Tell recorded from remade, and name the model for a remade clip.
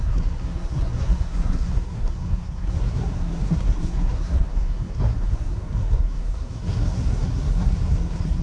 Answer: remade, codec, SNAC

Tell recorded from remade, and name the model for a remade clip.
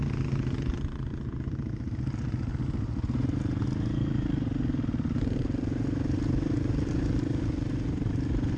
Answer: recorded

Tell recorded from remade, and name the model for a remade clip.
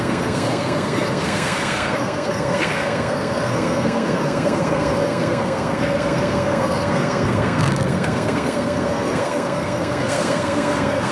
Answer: remade, codec, SNAC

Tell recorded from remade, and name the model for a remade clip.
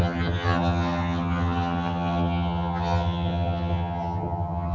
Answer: remade, vocoder, HiFi-GAN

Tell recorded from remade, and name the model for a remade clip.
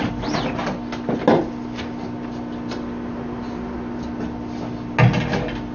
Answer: recorded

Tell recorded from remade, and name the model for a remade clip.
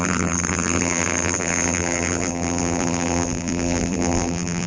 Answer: remade, vocoder, BigVGAN v2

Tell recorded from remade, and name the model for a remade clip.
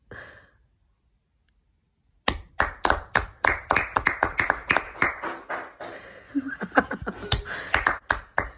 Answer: recorded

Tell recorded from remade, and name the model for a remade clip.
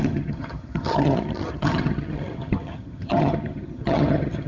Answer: remade, vocoder, HiFi-GAN